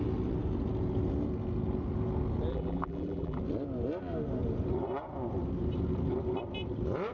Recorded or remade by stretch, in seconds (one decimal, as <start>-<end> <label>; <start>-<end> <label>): 0.0-2.5 recorded; 2.5-3.4 remade; 3.4-7.1 recorded